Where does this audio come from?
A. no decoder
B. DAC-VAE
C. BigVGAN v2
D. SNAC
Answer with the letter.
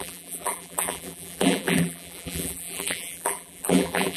C